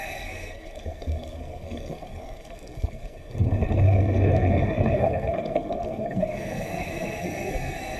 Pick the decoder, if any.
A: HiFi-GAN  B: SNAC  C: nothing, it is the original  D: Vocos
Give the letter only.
B